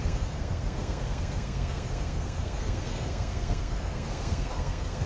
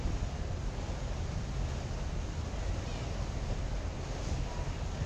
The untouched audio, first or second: second